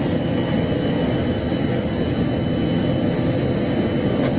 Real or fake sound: real